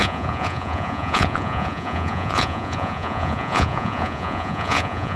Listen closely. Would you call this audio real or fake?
fake